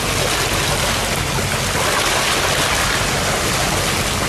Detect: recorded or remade recorded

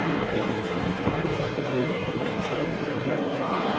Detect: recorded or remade remade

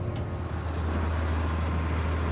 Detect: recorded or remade recorded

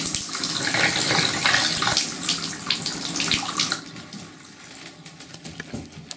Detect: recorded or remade recorded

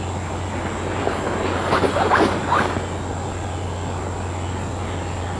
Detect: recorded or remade recorded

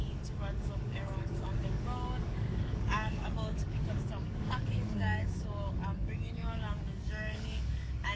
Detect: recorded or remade remade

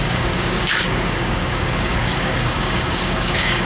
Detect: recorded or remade remade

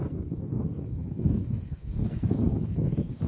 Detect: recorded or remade remade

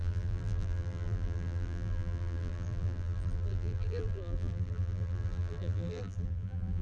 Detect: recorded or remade remade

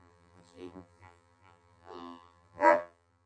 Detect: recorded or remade remade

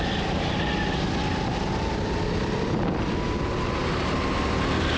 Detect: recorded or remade recorded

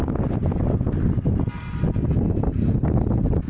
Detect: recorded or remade recorded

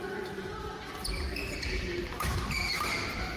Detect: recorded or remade recorded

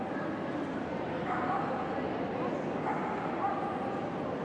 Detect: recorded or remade recorded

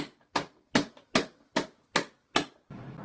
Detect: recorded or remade recorded